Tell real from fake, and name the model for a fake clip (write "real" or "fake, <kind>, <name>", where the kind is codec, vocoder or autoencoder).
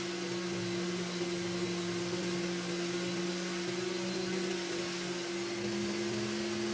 real